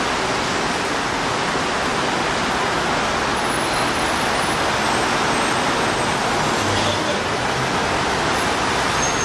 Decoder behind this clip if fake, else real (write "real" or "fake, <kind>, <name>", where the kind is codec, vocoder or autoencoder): real